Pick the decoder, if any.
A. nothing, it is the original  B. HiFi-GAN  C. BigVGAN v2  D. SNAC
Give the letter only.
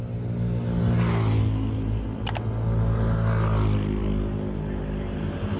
A